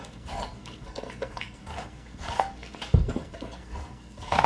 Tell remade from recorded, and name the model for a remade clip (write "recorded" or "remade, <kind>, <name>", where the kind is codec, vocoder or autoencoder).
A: remade, codec, SNAC